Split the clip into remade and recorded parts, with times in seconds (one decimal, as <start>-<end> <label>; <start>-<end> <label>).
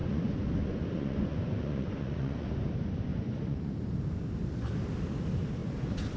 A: 0.0-2.5 remade; 2.5-3.1 recorded; 3.1-3.7 remade; 3.7-6.2 recorded